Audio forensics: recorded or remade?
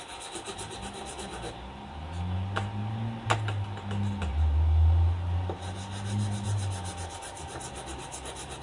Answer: recorded